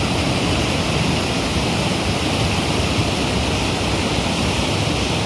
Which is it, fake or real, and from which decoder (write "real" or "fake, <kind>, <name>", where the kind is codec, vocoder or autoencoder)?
real